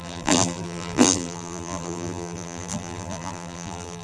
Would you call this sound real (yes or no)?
no